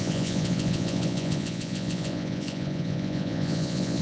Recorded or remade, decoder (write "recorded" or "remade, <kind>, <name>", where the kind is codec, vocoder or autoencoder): remade, vocoder, Vocos